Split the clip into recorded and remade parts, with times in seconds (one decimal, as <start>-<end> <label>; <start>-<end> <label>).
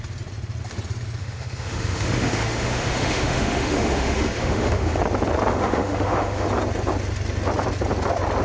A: 0.0-1.2 recorded; 1.2-5.0 remade; 5.0-5.5 recorded; 5.5-6.5 remade; 6.5-8.4 recorded